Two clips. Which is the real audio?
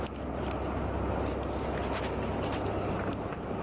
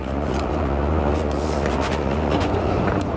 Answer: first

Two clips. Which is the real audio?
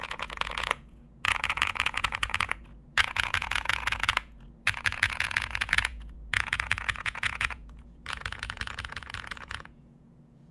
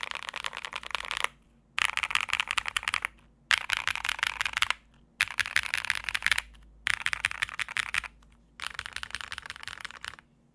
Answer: second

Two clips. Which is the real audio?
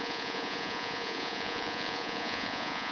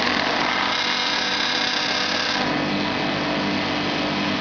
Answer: second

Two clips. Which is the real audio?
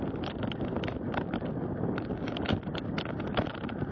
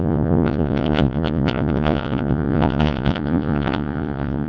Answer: first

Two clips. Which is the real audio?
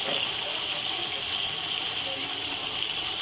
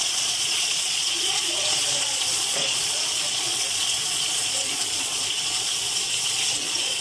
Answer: first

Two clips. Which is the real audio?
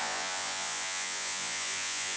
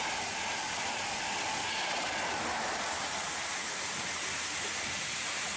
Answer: second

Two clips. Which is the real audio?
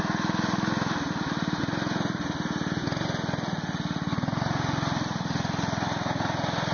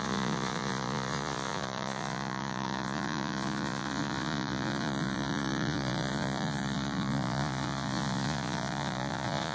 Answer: first